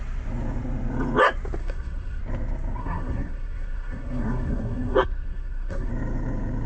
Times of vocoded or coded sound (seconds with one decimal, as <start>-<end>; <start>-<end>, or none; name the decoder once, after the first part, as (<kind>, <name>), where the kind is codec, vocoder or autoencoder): 1.6-2.2 (codec, SNAC); 2.8-5.9